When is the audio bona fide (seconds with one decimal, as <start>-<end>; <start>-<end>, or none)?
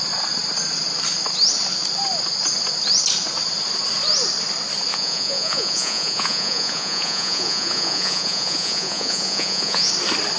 0.0-4.9; 9.9-10.4